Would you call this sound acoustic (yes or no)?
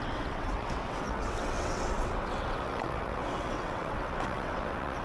no